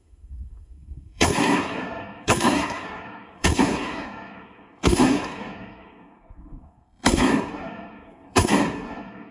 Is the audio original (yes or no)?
no